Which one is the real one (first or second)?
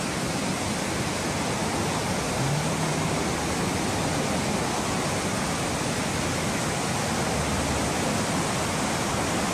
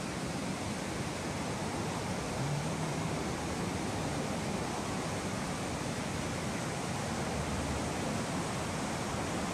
first